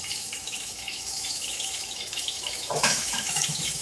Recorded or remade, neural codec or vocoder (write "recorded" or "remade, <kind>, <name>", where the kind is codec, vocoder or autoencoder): remade, autoencoder, DAC-VAE